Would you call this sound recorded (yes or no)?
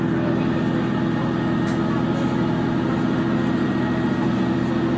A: yes